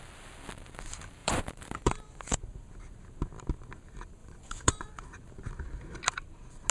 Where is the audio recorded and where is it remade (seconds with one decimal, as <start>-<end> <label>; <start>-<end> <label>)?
0.0-1.2 recorded; 1.2-2.4 remade; 2.4-4.2 recorded; 4.2-4.9 remade; 4.9-6.7 recorded